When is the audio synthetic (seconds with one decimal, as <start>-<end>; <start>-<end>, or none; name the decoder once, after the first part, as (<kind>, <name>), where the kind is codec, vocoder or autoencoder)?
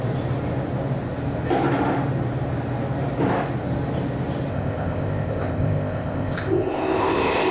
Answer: 4.5-7.5 (codec, ZipCodec)